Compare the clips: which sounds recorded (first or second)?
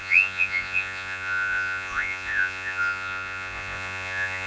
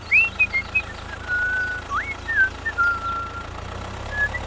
second